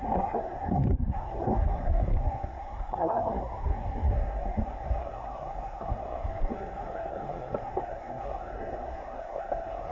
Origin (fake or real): fake